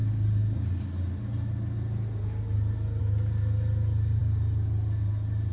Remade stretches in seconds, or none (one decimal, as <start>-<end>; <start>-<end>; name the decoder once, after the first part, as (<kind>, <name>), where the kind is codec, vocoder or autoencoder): none

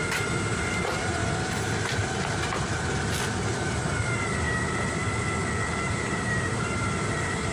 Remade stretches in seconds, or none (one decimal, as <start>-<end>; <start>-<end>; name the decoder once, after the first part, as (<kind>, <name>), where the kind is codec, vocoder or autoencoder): 0.0-1.2 (vocoder, BigVGAN v2); 5.7-7.5

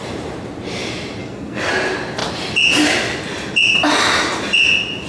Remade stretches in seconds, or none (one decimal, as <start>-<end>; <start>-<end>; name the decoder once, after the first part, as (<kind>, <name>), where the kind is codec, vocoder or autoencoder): 1.2-1.7 (codec, SNAC)

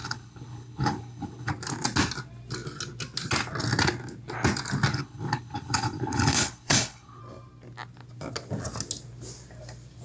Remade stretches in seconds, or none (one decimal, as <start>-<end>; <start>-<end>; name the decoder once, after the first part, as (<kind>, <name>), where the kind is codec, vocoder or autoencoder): 0.0-1.5 (codec, HILCodec); 4.9-7.2

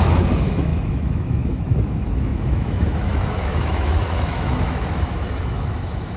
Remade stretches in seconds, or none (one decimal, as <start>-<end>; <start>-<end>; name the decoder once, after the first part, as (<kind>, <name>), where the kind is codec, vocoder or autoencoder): 0.0-6.2 (autoencoder, DAC-VAE)

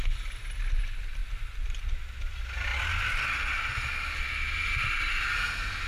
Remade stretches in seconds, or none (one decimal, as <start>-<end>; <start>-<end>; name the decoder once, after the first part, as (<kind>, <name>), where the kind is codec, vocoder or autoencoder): none